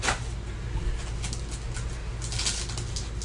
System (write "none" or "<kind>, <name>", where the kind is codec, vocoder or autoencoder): none